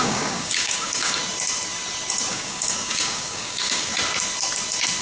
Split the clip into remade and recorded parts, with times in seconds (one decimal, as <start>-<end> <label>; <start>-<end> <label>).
0.0-1.2 remade; 1.2-2.3 recorded; 2.3-3.9 remade; 3.9-5.0 recorded